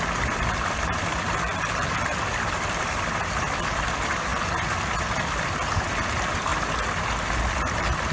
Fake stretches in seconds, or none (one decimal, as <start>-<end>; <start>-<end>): 0.0-4.3; 5.8-6.5; 7.5-8.1